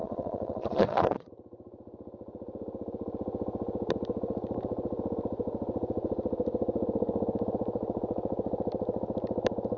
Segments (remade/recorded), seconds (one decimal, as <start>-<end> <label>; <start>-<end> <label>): 0.0-1.3 remade; 1.3-9.8 recorded